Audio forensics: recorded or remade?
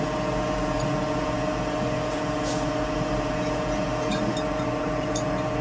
recorded